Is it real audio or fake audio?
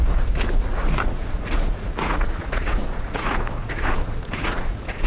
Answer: fake